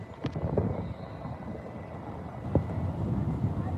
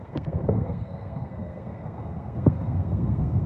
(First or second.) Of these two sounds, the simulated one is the second